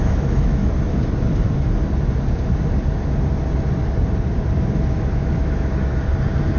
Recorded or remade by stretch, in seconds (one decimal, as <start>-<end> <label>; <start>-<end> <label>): 0.0-0.6 remade; 0.6-4.6 recorded; 4.6-6.1 remade; 6.1-6.6 recorded